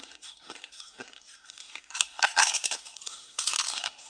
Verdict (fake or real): fake